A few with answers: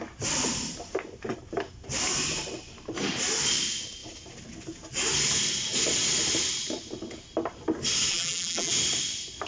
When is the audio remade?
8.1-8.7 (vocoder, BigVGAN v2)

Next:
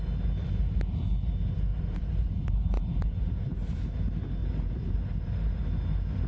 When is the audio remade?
1.7-3.7 (vocoder, BigVGAN v2); 4.4-5.6

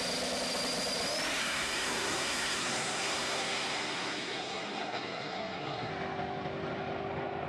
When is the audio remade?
1.4-5.9 (codec, SNAC)

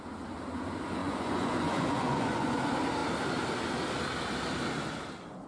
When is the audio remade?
1.0-2.6 (vocoder, Vocos)

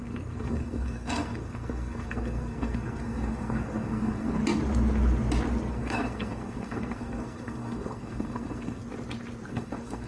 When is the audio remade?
0.0-4.4 (codec, SNAC); 5.7-8.8; 9.5-10.1